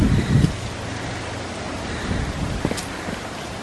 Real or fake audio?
real